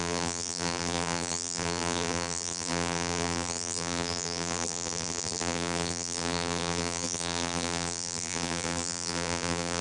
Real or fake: fake